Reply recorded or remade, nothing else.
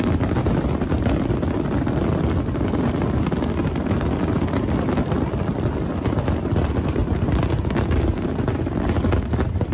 recorded